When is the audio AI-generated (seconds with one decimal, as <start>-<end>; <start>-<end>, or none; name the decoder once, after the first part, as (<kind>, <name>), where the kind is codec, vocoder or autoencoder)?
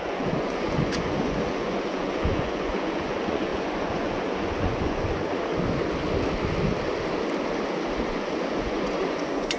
0.0-5.5 (vocoder, Vocos); 8.1-9.6